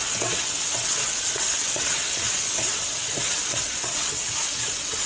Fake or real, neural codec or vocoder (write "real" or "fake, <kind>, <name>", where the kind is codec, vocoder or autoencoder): fake, vocoder, WaveNeXt